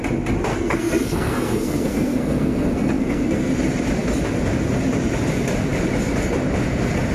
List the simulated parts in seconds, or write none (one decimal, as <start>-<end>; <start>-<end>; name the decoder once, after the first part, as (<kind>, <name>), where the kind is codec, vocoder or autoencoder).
0.5-3.5 (codec, SNAC)